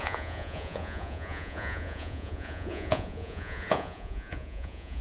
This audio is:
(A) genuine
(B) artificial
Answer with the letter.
B